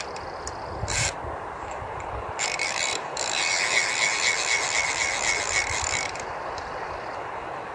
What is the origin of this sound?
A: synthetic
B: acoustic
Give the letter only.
A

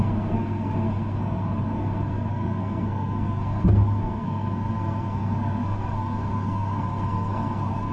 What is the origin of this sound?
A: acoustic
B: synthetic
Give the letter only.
B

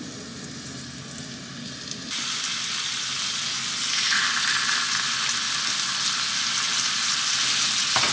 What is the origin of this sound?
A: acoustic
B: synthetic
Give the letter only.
A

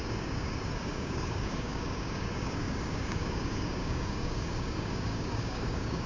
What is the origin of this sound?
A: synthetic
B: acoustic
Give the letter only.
A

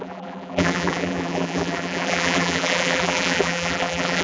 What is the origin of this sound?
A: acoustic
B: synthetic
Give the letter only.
B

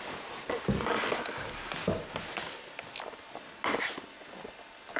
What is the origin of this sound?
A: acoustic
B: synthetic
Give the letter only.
A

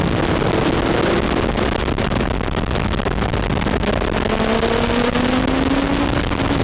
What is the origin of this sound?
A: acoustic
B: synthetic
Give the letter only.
A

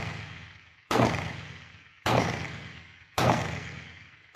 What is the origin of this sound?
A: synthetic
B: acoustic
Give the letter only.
A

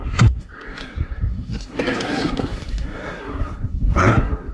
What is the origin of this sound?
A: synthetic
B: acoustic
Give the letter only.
A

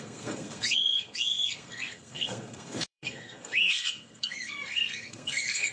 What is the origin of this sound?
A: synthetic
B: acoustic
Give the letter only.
A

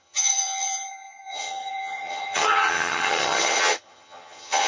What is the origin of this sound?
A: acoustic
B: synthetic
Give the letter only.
B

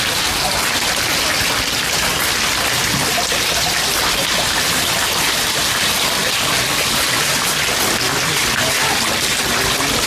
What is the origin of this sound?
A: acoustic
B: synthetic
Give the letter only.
A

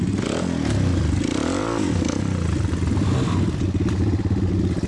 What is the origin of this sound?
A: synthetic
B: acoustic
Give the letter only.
B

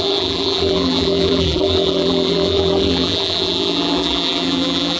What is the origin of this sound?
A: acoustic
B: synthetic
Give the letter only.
B